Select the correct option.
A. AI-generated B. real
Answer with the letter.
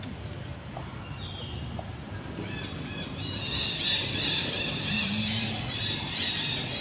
B